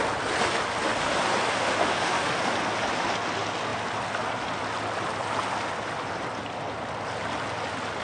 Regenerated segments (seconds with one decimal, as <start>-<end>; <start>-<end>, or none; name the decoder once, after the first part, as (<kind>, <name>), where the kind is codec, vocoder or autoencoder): 1.6-2.4 (autoencoder, DAC-VAE)